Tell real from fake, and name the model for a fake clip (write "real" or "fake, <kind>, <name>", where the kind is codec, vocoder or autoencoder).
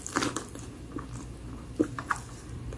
real